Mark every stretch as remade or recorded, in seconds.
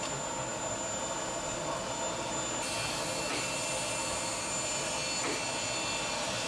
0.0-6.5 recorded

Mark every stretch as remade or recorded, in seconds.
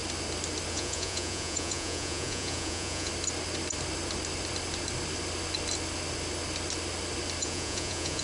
0.0-0.7 recorded; 0.7-3.1 remade; 3.1-7.4 recorded; 7.4-8.2 remade